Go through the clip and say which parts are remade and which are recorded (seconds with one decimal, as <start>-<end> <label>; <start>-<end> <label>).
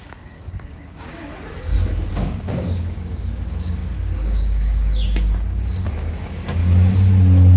0.0-1.3 remade; 1.3-2.1 recorded; 2.1-6.6 remade; 6.6-7.6 recorded